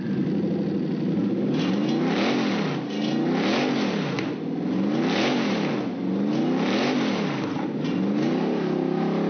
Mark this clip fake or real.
real